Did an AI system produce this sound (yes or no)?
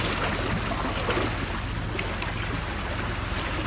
no